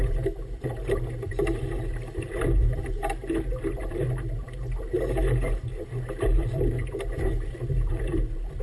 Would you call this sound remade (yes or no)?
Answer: yes